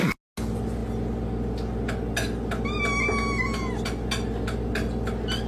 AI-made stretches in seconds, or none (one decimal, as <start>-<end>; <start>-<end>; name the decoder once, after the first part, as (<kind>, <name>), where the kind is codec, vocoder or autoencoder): none